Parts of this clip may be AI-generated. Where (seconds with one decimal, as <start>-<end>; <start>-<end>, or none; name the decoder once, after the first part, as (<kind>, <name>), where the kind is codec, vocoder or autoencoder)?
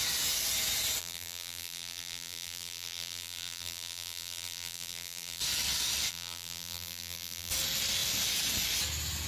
1.0-5.4 (vocoder, BigVGAN v2); 6.1-7.5